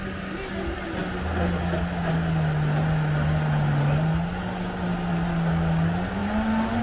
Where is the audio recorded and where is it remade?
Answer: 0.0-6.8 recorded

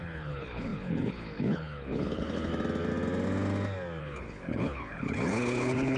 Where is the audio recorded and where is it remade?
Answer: 0.0-2.5 remade; 2.5-4.0 recorded; 4.0-6.0 remade

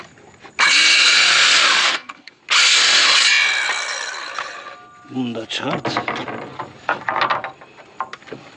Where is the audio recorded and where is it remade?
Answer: 0.0-1.8 recorded; 1.8-2.4 remade; 2.4-8.6 recorded

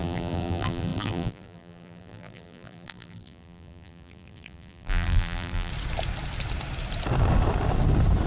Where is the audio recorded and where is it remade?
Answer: 0.0-5.7 remade; 5.7-8.3 recorded

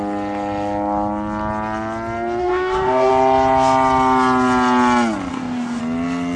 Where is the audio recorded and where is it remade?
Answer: 0.0-2.4 recorded; 2.4-3.1 remade; 3.1-5.3 recorded; 5.3-5.8 remade; 5.8-6.4 recorded

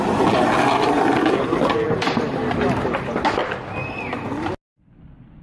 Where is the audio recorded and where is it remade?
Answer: 0.0-5.4 recorded